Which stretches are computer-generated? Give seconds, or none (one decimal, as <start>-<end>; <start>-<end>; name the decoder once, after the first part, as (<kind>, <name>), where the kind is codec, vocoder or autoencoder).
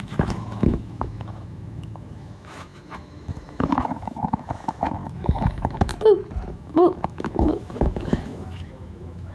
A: 0.0-5.9 (autoencoder, DAC-VAE); 6.5-9.3